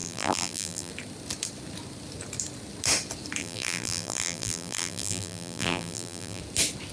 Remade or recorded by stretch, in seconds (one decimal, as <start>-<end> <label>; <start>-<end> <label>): 0.0-0.9 remade; 0.9-3.4 recorded; 3.4-6.4 remade; 6.4-6.9 recorded

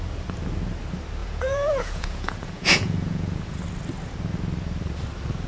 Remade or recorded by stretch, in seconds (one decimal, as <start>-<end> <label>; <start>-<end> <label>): 0.0-1.2 recorded; 1.2-3.6 remade; 3.6-5.5 recorded

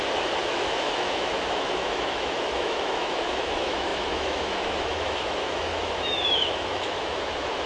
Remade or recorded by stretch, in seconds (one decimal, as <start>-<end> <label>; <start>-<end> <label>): 0.0-7.7 remade

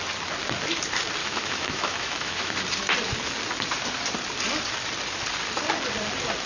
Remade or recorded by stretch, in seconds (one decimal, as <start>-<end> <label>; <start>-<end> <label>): 0.0-1.2 recorded; 1.2-2.5 remade; 2.5-6.5 recorded

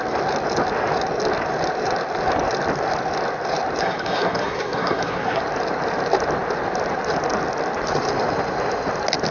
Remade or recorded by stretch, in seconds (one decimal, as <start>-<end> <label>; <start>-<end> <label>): 0.0-3.8 recorded; 3.8-5.4 remade; 5.4-9.3 recorded

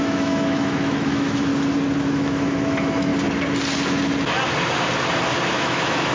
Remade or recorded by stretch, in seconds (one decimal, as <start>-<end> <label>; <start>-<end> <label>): 0.0-1.5 remade; 1.5-2.0 recorded; 2.0-3.1 remade; 3.1-5.5 recorded; 5.5-6.1 remade